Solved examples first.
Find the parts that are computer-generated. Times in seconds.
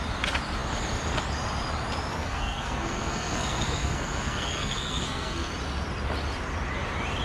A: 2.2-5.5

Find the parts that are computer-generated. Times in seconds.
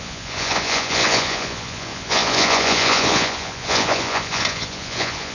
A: 0.0-5.3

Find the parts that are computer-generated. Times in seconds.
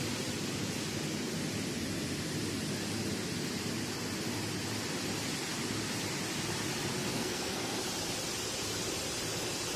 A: 7.1-7.8